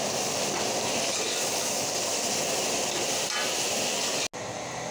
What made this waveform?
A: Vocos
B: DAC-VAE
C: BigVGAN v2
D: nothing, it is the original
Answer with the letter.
D